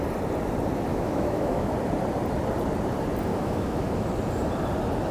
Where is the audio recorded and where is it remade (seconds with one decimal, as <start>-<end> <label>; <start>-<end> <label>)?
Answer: 0.0-0.9 recorded; 0.9-1.7 remade; 1.7-3.3 recorded; 3.3-3.9 remade; 3.9-5.1 recorded